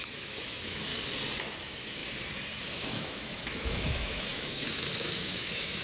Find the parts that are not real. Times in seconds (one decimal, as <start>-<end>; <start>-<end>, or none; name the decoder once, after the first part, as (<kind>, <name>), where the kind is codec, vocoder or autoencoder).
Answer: 0.0-0.9 (autoencoder, DAC-VAE); 1.4-2.0; 2.7-5.8